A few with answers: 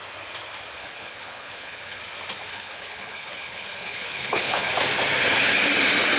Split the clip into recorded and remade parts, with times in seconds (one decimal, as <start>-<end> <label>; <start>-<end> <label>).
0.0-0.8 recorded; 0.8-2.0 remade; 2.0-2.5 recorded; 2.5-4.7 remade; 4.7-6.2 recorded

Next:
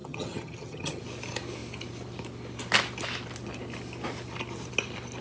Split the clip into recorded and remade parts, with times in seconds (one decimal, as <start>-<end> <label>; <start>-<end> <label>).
0.0-1.0 remade; 1.0-5.2 recorded

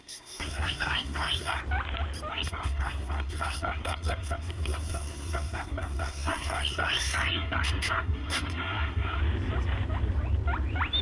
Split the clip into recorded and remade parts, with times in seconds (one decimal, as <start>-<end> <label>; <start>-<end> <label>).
0.0-1.6 remade; 1.6-2.3 recorded; 2.3-9.2 remade; 9.2-11.0 recorded

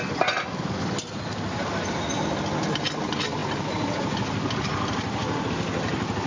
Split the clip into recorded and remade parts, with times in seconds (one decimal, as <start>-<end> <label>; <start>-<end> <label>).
0.0-1.3 recorded; 1.3-2.3 remade; 2.3-6.3 recorded

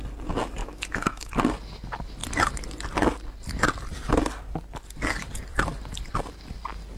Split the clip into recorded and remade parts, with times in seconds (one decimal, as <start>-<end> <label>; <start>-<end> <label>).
0.0-0.6 recorded; 0.6-1.3 remade; 1.3-7.0 recorded

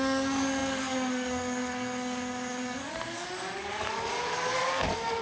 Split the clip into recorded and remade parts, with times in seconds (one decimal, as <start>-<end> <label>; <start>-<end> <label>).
0.0-5.2 remade